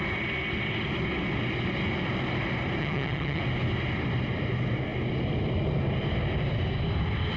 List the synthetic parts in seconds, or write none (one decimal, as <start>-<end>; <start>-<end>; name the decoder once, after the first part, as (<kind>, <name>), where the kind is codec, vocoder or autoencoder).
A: 2.8-3.4 (vocoder, HiFi-GAN)